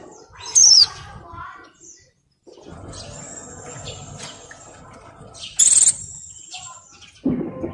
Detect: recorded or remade recorded